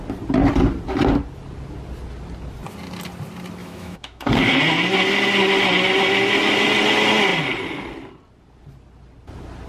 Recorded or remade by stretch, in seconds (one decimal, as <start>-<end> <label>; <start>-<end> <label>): 0.0-3.6 recorded; 3.6-4.3 remade; 4.3-9.7 recorded